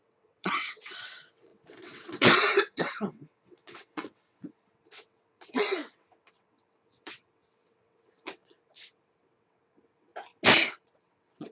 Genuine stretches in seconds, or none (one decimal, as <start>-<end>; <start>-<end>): 10.1-10.7